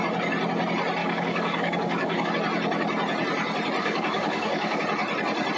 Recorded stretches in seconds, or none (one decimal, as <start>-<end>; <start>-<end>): 0.0-1.0; 2.3-3.8; 4.8-5.6